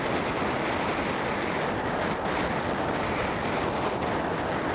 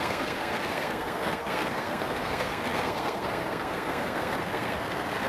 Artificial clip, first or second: second